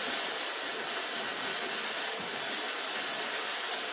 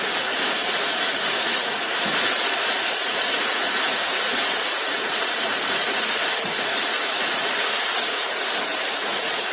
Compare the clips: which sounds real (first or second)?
first